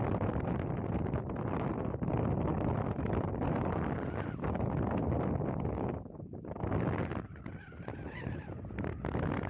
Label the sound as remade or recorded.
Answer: recorded